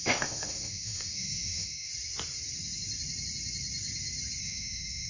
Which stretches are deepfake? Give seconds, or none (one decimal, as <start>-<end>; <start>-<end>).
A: 0.0-1.9; 4.4-5.1